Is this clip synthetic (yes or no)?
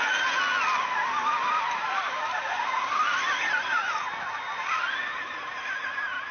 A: no